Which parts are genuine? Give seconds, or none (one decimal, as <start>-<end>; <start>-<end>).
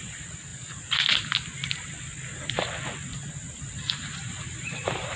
0.5-3.6